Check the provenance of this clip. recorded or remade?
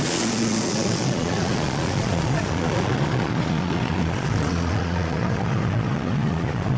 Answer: remade